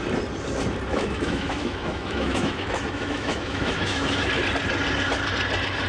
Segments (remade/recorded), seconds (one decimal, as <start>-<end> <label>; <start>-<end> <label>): 0.0-0.9 recorded; 0.9-4.3 remade; 4.3-5.9 recorded